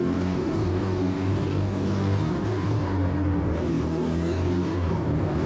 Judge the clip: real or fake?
fake